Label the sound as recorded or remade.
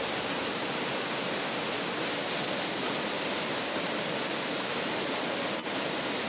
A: recorded